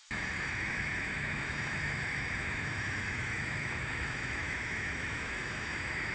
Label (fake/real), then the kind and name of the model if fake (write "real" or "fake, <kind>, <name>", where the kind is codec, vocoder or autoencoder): fake, autoencoder, DAC-VAE